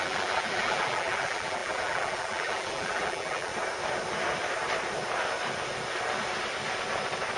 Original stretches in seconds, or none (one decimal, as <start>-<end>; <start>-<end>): 3.5-7.4